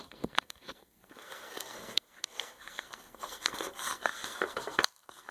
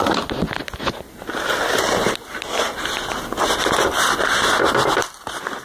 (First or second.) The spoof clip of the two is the first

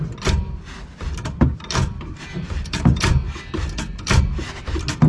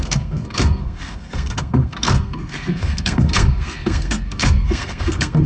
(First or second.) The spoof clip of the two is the second